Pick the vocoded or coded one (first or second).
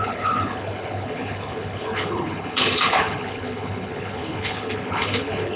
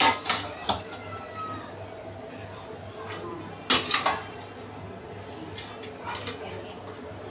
first